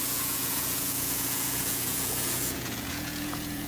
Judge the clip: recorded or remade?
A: remade